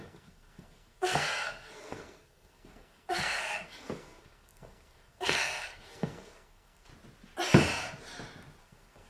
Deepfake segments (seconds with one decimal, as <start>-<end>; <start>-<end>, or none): 0.0-6.9; 8.6-9.1